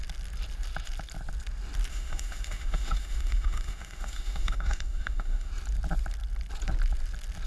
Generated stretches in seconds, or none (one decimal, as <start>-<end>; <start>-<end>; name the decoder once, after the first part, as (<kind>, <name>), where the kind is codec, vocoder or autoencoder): 1.9-5.5 (autoencoder, DAC-VAE)

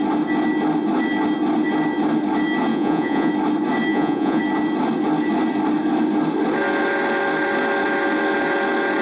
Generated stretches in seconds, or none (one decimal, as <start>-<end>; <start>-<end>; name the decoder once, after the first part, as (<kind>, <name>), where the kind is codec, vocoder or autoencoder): 2.7-3.3 (vocoder, Vocos); 3.9-4.4

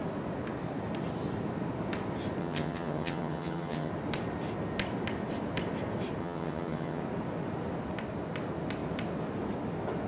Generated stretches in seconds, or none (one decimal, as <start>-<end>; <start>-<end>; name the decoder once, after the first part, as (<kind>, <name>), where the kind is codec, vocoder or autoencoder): 2.4-3.9 (vocoder, HiFi-GAN); 6.2-7.0

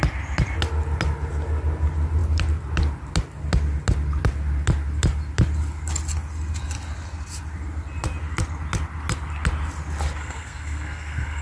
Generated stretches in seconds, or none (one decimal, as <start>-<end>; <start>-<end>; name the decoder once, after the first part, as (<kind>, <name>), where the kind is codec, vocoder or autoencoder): 10.2-11.4 (codec, SNAC)

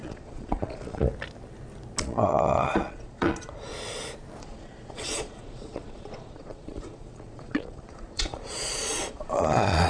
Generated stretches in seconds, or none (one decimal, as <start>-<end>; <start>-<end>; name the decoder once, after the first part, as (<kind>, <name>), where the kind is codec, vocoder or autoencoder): 0.0-1.1 (vocoder, Vocos); 2.0-3.7; 4.4-9.9